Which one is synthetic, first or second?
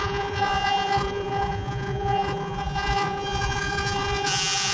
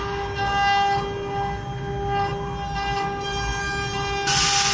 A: first